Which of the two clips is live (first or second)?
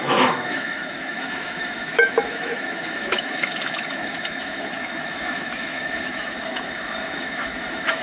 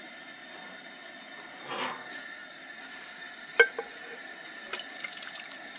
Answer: second